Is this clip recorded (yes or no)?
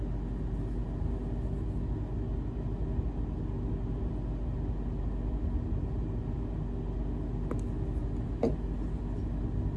yes